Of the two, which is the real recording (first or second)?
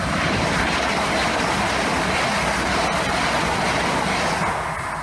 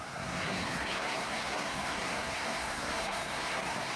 first